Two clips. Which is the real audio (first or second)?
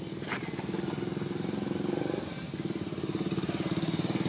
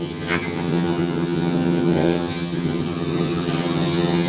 first